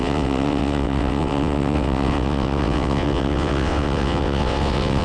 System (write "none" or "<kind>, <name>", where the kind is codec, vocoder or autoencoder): vocoder, WaveNeXt